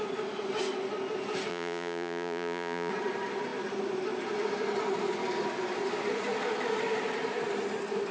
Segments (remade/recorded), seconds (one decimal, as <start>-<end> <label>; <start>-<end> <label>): 0.0-1.5 recorded; 1.5-2.9 remade; 2.9-8.1 recorded